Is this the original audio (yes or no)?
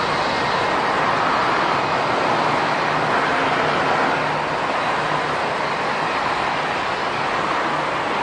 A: yes